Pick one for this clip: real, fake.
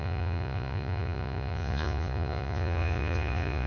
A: fake